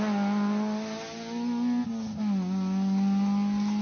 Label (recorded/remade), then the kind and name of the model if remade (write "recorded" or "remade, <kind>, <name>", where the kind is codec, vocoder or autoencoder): recorded